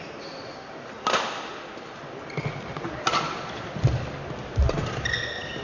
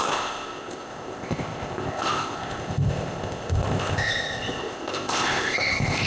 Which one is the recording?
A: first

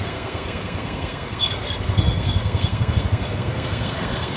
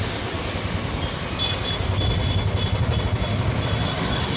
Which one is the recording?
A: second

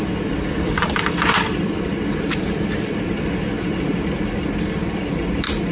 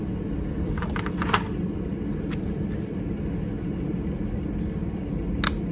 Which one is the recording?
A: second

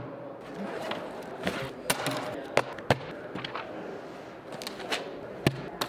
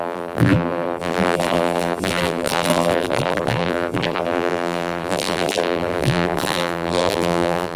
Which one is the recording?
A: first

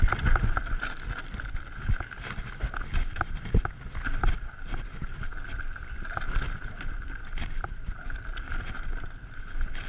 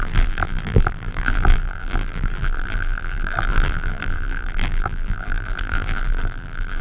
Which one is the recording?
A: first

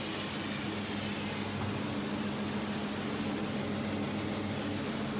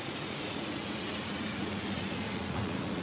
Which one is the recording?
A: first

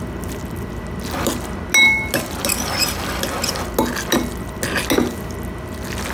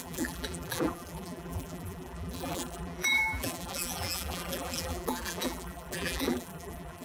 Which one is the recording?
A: first